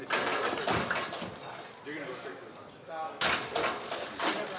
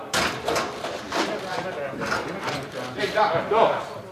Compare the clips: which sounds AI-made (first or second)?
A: second